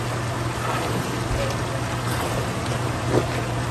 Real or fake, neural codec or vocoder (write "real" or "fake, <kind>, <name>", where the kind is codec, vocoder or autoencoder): real